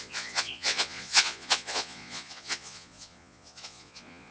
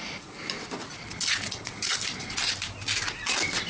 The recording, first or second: second